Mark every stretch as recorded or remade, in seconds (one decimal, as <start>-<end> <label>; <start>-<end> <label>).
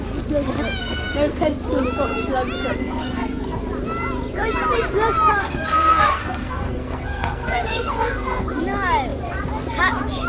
0.0-0.8 recorded; 0.8-1.4 remade; 1.4-2.8 recorded; 2.8-3.6 remade; 3.6-5.4 recorded; 5.4-8.6 remade; 8.6-10.3 recorded